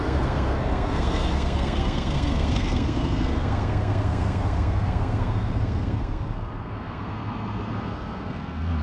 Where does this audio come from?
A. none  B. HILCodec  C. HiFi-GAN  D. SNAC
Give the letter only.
D